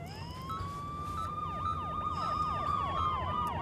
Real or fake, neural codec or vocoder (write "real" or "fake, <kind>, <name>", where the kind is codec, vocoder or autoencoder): real